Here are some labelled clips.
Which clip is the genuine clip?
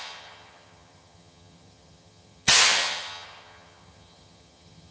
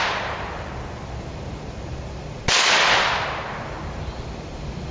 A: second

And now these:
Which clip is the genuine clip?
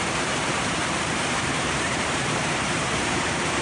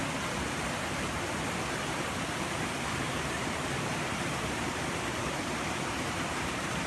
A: second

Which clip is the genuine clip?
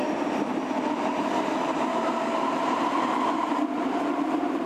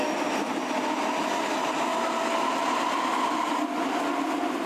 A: second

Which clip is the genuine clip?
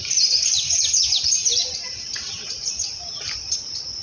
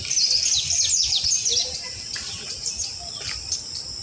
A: second